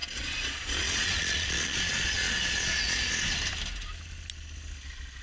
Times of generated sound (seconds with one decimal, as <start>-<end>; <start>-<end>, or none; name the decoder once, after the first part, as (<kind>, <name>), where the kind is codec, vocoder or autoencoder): 0.0-3.1 (vocoder, Vocos)

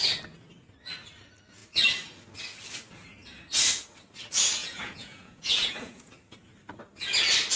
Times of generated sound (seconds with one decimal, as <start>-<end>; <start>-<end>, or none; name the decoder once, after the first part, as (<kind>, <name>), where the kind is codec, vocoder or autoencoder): 4.6-6.1 (vocoder, Vocos)

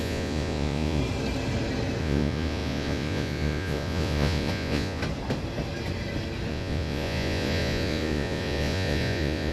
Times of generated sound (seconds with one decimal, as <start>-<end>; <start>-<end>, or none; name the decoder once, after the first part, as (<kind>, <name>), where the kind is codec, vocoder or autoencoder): 0.0-1.0 (vocoder, Vocos); 2.0-5.0; 6.5-9.5